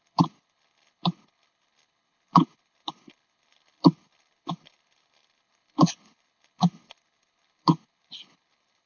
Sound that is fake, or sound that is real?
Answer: fake